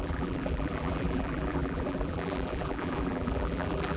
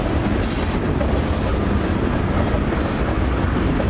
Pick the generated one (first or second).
first